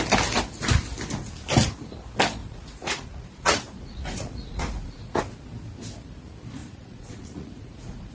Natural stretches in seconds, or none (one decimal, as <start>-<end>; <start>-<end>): 0.0-2.4; 5.2-6.6

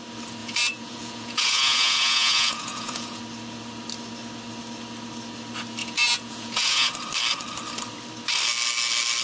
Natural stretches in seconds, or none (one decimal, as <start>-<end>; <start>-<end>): 0.0-0.4; 3.2-5.8; 6.9-9.2